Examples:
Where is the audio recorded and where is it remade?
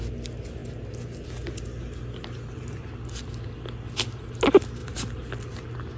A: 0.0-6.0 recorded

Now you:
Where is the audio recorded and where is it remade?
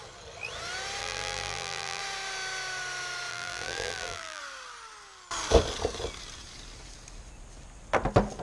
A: 0.0-1.0 recorded; 1.0-2.0 remade; 2.0-3.3 recorded; 3.3-4.4 remade; 4.4-8.4 recorded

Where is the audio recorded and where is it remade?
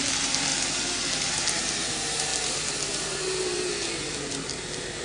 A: 0.0-0.5 remade; 0.5-1.3 recorded; 1.3-5.0 remade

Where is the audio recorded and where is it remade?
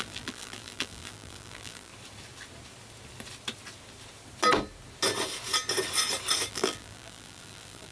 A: 0.0-1.9 remade; 1.9-6.5 recorded; 6.5-7.9 remade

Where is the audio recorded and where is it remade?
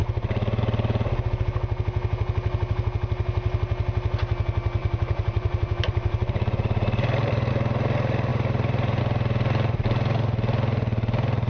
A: 0.0-4.8 recorded; 4.8-7.5 remade; 7.5-8.3 recorded; 8.3-9.0 remade; 9.0-11.5 recorded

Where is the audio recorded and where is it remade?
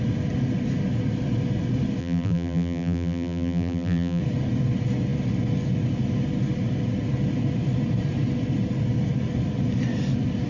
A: 0.0-2.0 recorded; 2.0-4.2 remade; 4.2-10.5 recorded